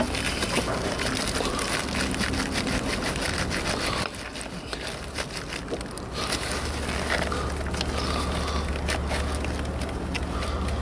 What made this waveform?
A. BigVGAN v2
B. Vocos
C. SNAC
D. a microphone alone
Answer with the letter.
D